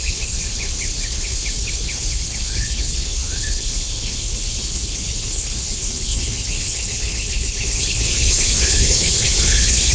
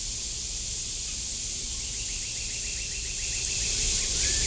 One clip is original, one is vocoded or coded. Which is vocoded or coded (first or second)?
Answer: first